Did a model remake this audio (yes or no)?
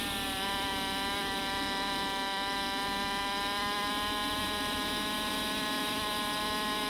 no